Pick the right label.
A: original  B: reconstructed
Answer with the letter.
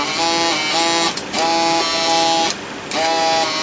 A